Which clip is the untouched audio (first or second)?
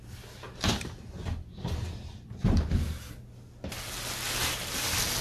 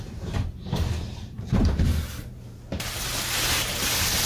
first